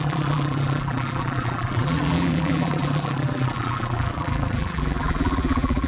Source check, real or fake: fake